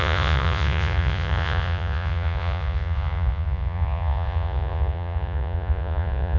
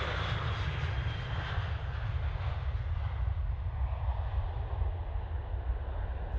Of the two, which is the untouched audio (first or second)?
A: second